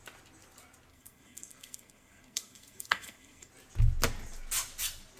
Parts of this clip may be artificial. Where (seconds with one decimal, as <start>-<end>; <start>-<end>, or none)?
0.9-3.5